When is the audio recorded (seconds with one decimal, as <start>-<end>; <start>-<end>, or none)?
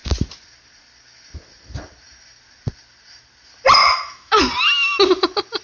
0.0-3.8; 4.4-5.6